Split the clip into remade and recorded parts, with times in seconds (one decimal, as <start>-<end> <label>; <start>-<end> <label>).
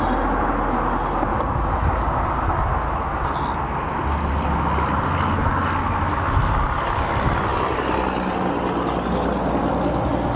0.0-10.4 recorded